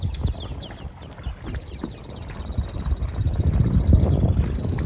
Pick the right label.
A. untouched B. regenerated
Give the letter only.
A